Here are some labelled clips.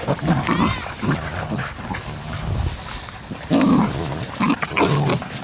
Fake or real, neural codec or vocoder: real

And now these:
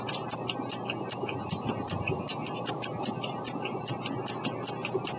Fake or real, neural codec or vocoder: real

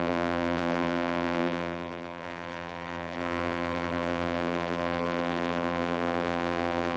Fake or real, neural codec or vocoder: fake, vocoder, BigVGAN v2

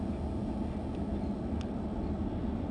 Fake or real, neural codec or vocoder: real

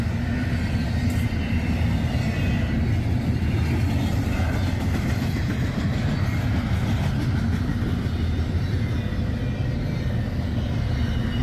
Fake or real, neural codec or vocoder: real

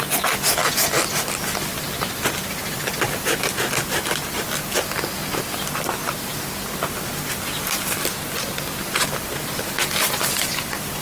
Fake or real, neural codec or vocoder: real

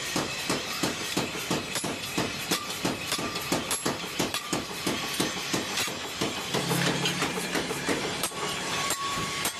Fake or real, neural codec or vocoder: fake, vocoder, BigVGAN v2